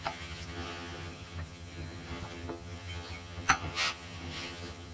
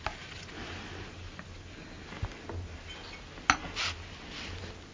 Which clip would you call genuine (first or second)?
second